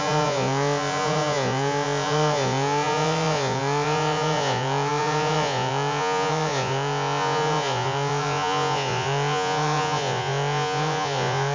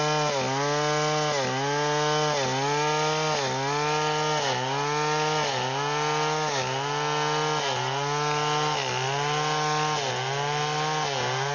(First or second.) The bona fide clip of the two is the second